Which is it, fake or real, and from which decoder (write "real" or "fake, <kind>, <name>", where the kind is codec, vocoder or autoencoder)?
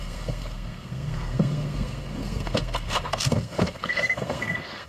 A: fake, codec, SNAC